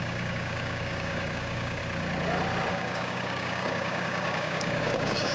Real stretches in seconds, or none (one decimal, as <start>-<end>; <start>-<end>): 1.8-2.7